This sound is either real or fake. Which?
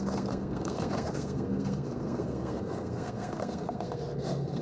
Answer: fake